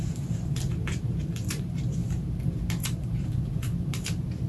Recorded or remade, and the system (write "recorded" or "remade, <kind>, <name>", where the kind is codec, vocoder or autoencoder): remade, vocoder, BigVGAN v2